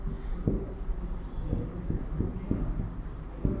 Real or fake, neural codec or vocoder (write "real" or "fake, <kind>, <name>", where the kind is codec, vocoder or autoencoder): real